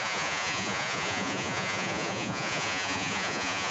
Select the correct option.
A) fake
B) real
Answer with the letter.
A